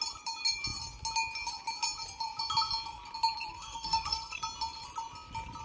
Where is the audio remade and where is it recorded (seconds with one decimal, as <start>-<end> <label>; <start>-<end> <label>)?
0.0-3.5 recorded; 3.5-4.4 remade; 4.4-5.6 recorded